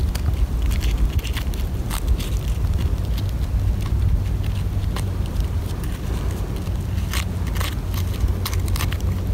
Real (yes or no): yes